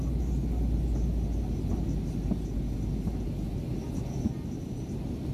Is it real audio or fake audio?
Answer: real